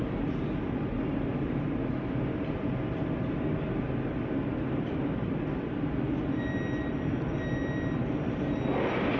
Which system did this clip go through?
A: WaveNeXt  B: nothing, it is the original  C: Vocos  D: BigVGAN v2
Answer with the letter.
B